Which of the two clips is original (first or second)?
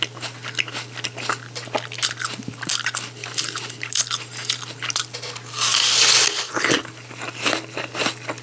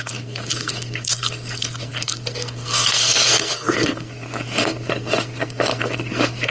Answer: first